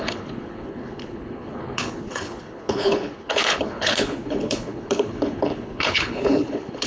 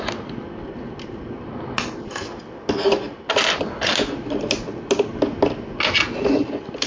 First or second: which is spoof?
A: first